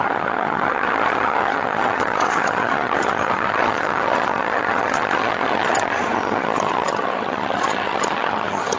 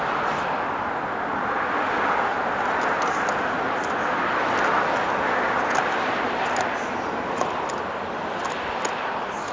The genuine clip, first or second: second